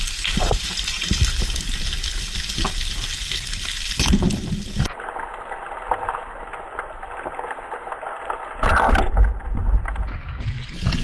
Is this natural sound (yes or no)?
yes